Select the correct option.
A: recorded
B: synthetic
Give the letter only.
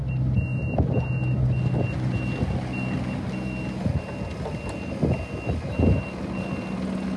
A